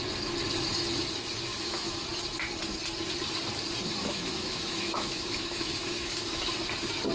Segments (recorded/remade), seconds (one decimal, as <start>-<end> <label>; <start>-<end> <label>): 0.0-1.5 recorded; 1.5-2.0 remade; 2.0-4.0 recorded; 4.0-6.4 remade; 6.4-7.1 recorded